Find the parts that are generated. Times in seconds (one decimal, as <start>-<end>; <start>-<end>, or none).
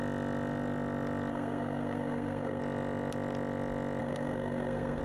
1.3-2.6; 4.0-5.0